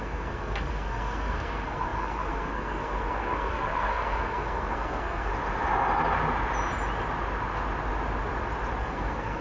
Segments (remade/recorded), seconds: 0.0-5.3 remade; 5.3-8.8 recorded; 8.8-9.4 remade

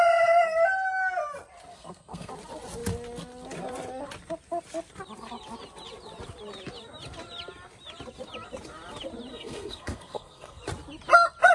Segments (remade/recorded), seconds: 0.0-1.7 recorded; 1.7-2.3 remade; 2.3-9.3 recorded; 9.3-10.6 remade; 10.6-11.5 recorded

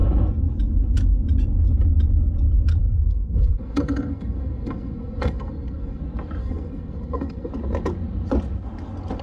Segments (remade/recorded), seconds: 0.0-2.8 recorded; 2.8-6.0 remade; 6.0-6.4 recorded; 6.4-7.5 remade; 7.5-9.2 recorded

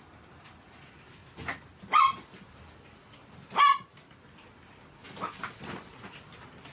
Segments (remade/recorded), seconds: 0.0-6.7 recorded

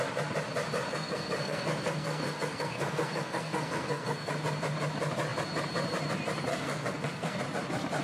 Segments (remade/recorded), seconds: 0.0-0.9 recorded; 0.9-4.3 remade; 4.3-6.5 recorded; 6.5-7.4 remade; 7.4-8.0 recorded

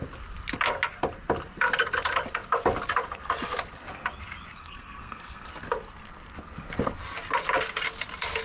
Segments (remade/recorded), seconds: 0.0-4.6 recorded; 4.6-5.5 remade; 5.5-8.4 recorded

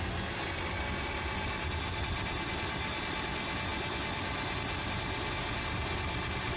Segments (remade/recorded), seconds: 0.0-6.6 recorded